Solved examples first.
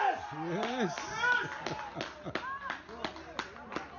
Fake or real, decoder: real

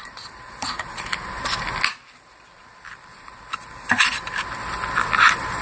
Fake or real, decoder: fake, vocoder, BigVGAN v2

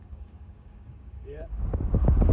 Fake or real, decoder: fake, codec, DAC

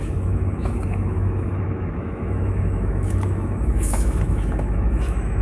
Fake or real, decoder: fake, autoencoder, DAC-VAE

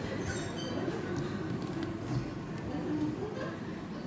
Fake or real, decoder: real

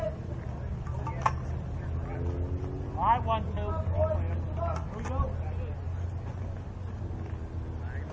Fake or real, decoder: real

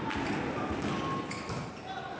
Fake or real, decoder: real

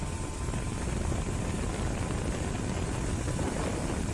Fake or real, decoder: real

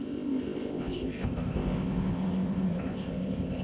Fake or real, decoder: fake, codec, ZipCodec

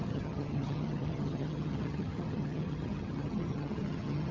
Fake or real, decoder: fake, vocoder, HiFi-GAN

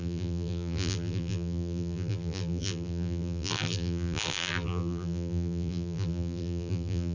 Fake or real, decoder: fake, vocoder, BigVGAN v2